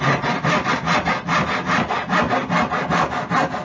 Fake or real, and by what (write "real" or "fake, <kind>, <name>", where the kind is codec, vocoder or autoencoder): real